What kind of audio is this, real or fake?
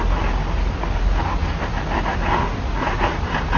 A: real